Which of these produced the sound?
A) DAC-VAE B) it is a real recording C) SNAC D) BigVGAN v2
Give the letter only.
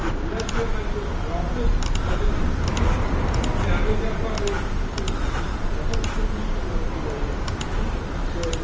B